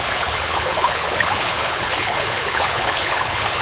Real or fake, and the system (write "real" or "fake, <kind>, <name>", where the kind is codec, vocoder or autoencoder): fake, codec, HILCodec